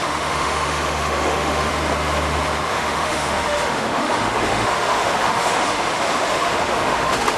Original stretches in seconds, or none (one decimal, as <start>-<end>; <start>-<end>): 1.7-2.7